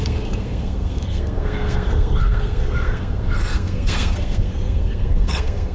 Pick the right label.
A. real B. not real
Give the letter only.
B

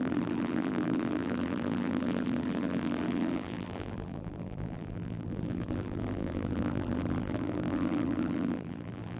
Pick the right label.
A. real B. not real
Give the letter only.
B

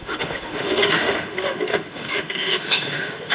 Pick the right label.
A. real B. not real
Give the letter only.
B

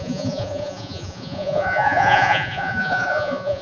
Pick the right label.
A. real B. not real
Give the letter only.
B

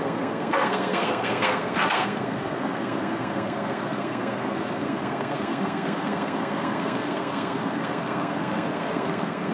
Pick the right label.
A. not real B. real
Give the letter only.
A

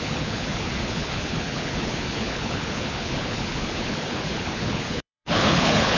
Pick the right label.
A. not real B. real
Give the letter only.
A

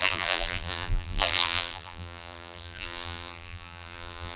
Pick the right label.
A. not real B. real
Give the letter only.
A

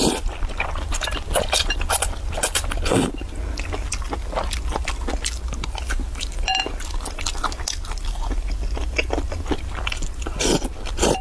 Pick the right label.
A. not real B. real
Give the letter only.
B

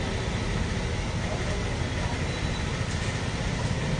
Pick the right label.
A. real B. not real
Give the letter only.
A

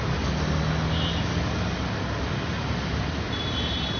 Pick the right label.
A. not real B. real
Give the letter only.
B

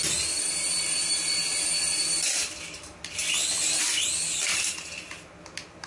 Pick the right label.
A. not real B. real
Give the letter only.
B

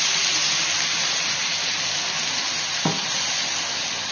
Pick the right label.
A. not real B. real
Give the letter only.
B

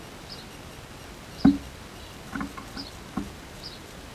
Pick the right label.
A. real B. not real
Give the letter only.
A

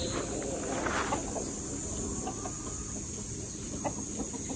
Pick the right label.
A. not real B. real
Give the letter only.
B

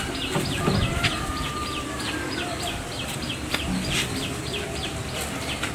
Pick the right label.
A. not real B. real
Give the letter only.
B